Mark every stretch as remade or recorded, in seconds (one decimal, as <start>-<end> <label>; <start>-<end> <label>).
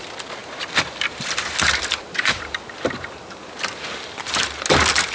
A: 0.0-0.4 recorded; 0.4-3.5 remade; 3.5-5.1 recorded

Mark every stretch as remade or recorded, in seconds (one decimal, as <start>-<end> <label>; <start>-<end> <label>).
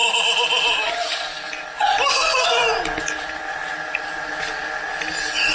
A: 0.0-5.5 recorded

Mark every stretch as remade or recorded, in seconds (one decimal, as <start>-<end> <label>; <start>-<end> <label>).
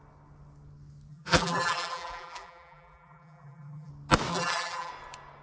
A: 0.0-1.1 recorded; 1.1-3.9 remade; 3.9-4.3 recorded; 4.3-4.9 remade; 4.9-5.4 recorded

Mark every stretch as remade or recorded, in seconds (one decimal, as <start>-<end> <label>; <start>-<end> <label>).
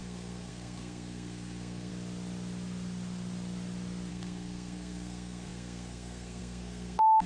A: 0.0-1.9 remade; 1.9-4.1 recorded; 4.1-7.3 remade